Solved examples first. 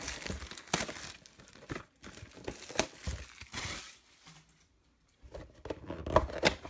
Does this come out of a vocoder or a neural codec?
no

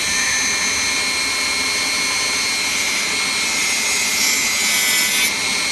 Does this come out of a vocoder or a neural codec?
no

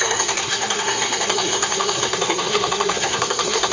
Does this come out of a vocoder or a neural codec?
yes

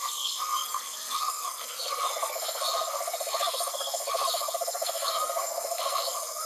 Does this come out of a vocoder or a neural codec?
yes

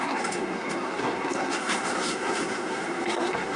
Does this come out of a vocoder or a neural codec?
yes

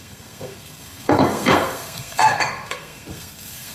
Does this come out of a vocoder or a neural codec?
yes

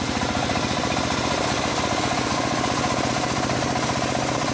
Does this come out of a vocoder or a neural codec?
no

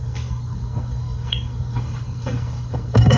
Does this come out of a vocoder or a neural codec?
yes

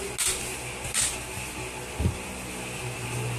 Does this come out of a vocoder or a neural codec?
no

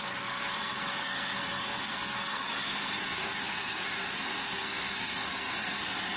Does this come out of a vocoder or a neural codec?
yes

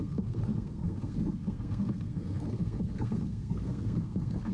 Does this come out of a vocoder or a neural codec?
yes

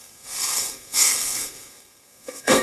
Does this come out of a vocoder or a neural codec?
yes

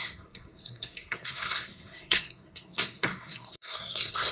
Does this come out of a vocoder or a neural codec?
yes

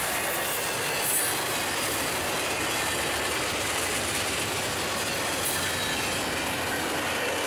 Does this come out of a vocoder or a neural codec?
no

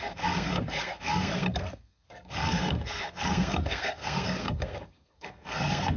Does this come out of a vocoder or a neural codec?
yes